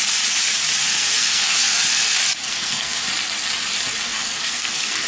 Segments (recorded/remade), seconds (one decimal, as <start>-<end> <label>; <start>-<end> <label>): 0.0-0.8 recorded; 0.8-1.8 remade; 1.8-2.4 recorded; 2.4-3.0 remade; 3.0-4.1 recorded; 4.1-5.1 remade